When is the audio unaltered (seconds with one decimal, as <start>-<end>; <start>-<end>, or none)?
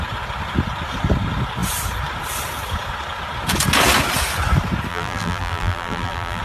0.0-4.9